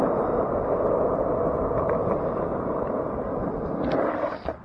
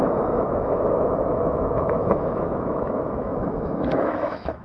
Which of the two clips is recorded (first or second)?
first